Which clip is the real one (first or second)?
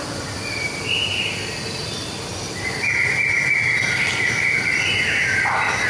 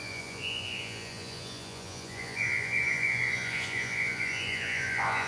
first